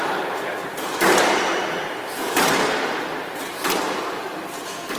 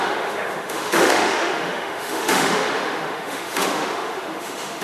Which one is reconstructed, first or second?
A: second